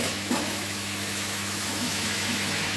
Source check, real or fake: fake